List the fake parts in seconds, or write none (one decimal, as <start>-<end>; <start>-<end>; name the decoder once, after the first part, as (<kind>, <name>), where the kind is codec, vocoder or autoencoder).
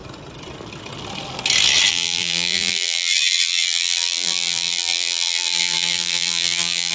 1.9-6.9 (vocoder, BigVGAN v2)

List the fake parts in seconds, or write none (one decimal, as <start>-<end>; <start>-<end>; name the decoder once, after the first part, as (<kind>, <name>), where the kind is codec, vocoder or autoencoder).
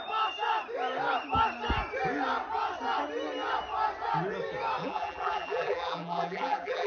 4.8-6.9 (vocoder, BigVGAN v2)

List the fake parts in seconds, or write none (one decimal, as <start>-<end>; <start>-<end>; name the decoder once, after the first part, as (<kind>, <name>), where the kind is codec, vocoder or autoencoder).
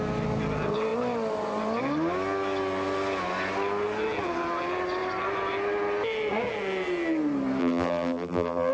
7.6-8.7 (vocoder, BigVGAN v2)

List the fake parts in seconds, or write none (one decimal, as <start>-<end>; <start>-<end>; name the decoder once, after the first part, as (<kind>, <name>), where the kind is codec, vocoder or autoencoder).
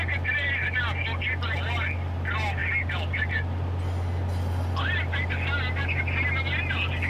none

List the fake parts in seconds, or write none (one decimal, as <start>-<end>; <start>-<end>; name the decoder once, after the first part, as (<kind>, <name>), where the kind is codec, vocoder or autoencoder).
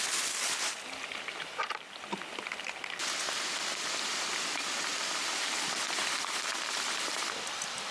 0.0-2.1 (vocoder, BigVGAN v2); 5.7-7.9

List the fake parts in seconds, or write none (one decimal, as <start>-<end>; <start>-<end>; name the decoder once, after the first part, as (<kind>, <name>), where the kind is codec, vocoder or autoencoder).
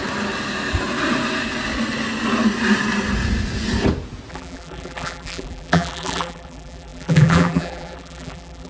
4.3-8.7 (vocoder, BigVGAN v2)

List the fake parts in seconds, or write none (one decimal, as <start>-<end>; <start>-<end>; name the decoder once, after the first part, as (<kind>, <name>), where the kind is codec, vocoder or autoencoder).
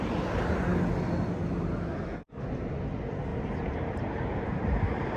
3.3-4.5 (vocoder, BigVGAN v2)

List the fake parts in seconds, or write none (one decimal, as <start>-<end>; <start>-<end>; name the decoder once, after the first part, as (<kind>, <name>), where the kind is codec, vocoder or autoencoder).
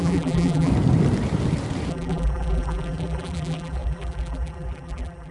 0.0-0.7 (vocoder, BigVGAN v2); 1.9-5.3